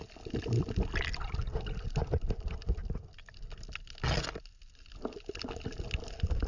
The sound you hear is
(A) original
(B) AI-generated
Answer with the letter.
A